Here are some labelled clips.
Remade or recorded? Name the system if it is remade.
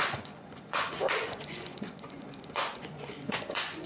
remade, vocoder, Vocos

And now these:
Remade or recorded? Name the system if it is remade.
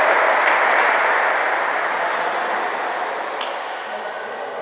recorded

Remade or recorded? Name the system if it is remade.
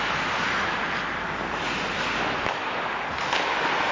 recorded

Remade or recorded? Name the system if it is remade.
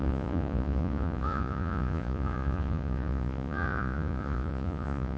remade, vocoder, Vocos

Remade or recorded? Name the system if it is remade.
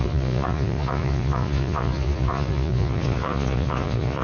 remade, vocoder, Vocos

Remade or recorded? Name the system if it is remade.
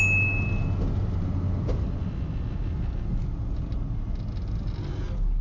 recorded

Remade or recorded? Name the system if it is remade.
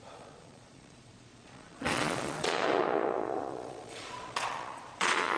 remade, vocoder, Vocos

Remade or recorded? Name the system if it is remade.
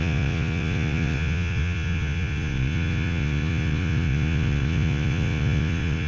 remade, vocoder, Vocos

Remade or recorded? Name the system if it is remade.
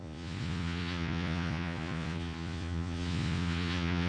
remade, vocoder, Vocos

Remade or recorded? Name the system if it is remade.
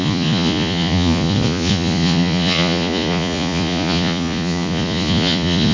remade, vocoder, Vocos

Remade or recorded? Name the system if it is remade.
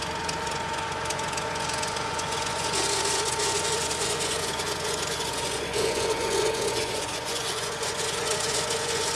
remade, vocoder, Vocos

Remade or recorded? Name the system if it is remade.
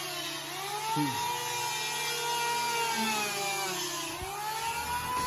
recorded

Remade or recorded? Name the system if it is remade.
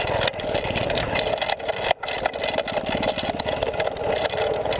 recorded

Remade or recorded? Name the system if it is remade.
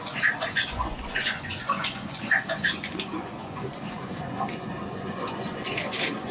remade, vocoder, Vocos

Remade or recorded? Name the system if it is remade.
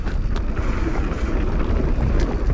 recorded